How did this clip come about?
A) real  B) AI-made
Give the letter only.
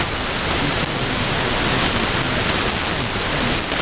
A